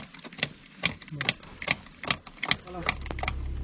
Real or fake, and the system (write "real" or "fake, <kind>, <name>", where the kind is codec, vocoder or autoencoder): real